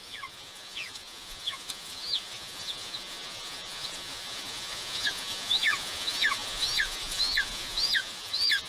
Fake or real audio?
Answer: fake